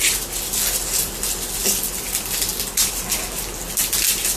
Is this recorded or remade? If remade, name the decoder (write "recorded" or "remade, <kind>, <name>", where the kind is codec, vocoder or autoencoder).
recorded